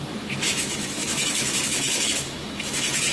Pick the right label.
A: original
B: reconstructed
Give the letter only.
B